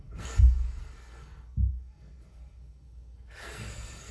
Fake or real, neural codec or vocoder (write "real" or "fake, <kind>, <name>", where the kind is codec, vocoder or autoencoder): fake, codec, SNAC